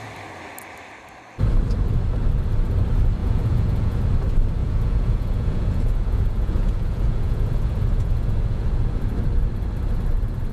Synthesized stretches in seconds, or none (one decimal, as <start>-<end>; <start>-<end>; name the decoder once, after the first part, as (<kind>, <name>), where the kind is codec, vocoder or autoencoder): 3.2-4.0 (vocoder, Vocos); 4.6-9.0